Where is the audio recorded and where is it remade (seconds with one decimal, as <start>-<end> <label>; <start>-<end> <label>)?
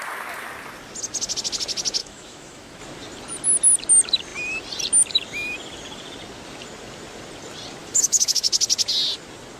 0.0-2.0 recorded; 2.0-2.8 remade; 2.8-7.8 recorded; 7.8-8.5 remade; 8.5-9.6 recorded